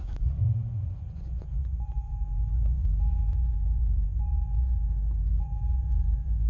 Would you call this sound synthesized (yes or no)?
yes